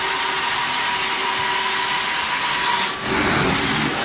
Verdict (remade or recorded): recorded